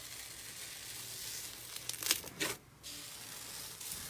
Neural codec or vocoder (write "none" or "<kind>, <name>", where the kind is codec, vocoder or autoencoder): none